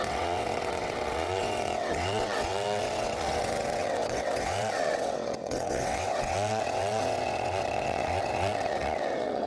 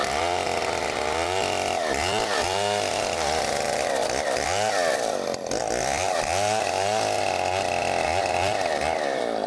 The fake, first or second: first